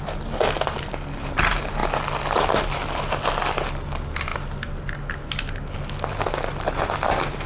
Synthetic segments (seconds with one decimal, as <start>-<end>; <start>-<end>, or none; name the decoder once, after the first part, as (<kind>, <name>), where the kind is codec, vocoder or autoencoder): none